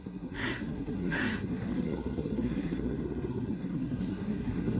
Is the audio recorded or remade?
remade